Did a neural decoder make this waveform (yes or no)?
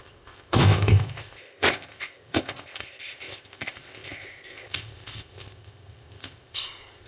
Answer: yes